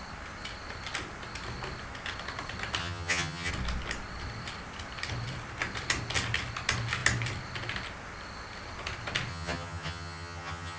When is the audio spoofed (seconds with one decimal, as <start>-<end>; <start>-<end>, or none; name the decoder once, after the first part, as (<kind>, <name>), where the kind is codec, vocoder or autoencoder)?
2.8-3.5 (vocoder, HiFi-GAN); 9.3-10.8